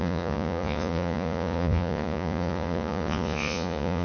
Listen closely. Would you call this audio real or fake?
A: fake